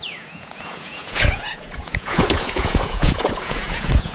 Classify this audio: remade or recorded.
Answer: remade